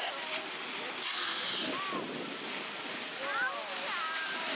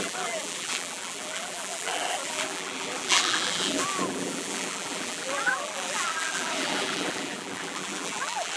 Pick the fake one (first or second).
second